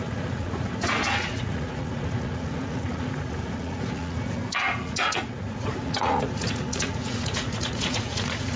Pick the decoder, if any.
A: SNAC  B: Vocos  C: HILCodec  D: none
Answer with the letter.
B